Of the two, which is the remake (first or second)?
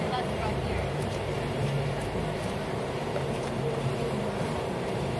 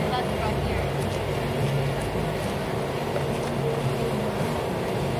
first